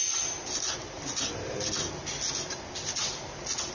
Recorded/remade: recorded